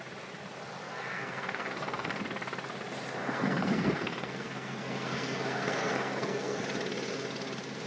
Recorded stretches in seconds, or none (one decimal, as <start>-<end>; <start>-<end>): 0.0-0.8; 2.2-3.2; 6.6-7.9

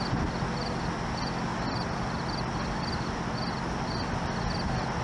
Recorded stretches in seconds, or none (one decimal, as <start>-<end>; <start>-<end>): 0.0-5.0